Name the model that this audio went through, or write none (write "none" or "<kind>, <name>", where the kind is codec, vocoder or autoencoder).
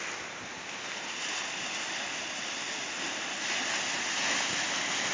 none